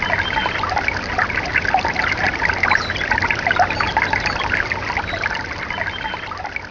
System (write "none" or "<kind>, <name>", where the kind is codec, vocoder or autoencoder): none